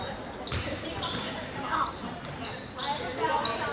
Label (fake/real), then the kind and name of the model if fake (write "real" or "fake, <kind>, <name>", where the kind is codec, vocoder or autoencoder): fake, vocoder, BigVGAN v2